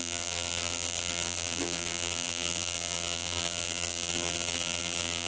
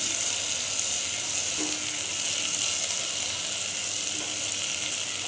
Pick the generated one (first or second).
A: first